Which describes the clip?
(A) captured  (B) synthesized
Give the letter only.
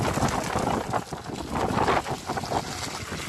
A